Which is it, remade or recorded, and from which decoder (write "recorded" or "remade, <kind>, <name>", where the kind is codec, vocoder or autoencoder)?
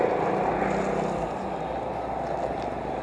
recorded